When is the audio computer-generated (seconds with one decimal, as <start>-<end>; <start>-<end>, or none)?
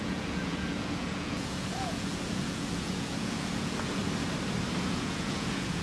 0.0-4.0; 4.8-5.8